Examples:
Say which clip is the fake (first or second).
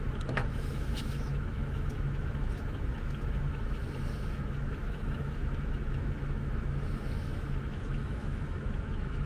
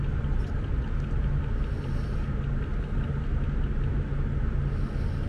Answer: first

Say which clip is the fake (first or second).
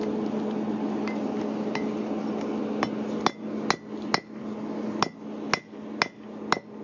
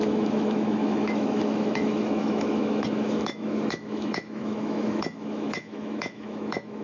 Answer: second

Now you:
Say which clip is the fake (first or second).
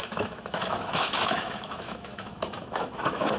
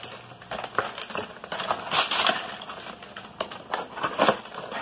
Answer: first